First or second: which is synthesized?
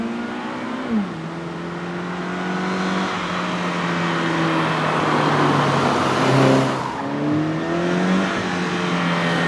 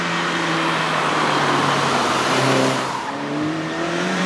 second